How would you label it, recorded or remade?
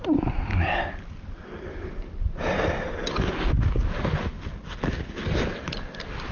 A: recorded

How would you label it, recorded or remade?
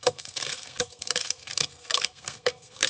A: remade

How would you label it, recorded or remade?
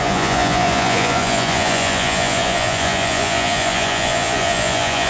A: remade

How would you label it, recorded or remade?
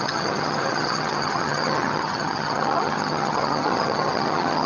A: remade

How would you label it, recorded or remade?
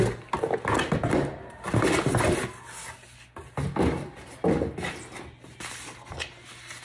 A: recorded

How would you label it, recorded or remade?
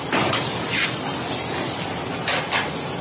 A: recorded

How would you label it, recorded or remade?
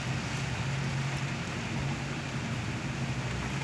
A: recorded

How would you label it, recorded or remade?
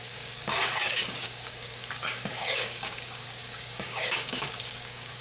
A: remade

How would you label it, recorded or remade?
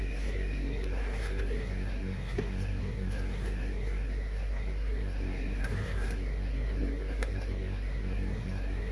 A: remade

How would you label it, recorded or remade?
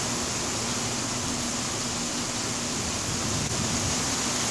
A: recorded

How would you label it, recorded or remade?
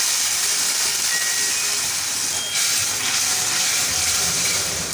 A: remade